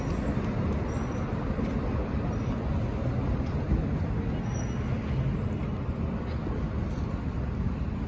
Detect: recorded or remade recorded